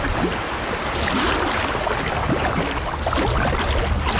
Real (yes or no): yes